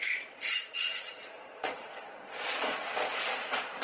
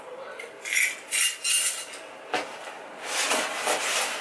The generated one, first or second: first